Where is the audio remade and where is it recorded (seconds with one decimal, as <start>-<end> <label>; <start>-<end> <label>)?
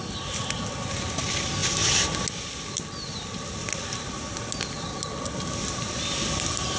0.0-6.8 recorded